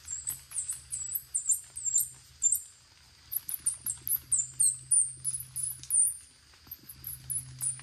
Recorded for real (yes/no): yes